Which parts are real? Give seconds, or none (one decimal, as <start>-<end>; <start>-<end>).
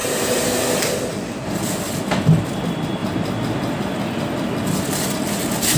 0.0-5.8